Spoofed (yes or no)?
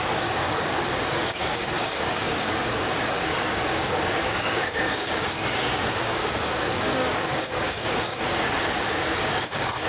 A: yes